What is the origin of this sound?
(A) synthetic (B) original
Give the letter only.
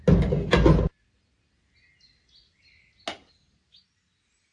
B